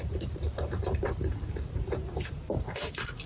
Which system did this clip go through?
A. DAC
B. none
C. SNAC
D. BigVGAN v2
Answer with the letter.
D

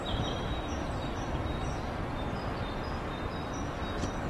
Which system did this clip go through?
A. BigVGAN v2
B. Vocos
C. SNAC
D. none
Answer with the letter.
A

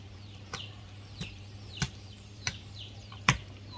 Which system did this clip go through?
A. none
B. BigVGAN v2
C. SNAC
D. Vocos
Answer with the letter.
B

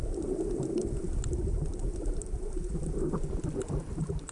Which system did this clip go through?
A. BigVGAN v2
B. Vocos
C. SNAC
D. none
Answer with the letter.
A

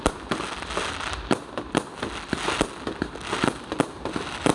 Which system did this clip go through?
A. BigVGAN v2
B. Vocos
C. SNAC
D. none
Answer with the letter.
D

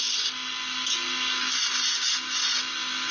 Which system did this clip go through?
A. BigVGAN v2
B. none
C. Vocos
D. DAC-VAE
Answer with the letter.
B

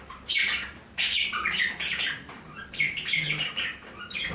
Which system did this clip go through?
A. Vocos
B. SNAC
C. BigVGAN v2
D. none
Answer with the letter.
C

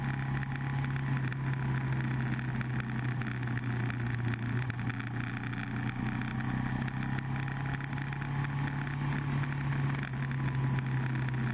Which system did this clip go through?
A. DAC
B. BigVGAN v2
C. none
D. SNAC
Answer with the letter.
C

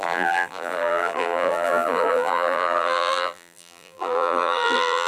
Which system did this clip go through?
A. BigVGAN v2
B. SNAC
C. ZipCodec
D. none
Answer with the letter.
A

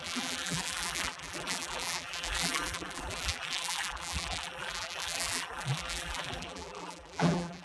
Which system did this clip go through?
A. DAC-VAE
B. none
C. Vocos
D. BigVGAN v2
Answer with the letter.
D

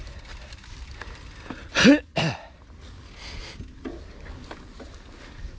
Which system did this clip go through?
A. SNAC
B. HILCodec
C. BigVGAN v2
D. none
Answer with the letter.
D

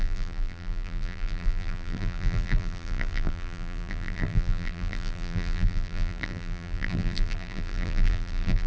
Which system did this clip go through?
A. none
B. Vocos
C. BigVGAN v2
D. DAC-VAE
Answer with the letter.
C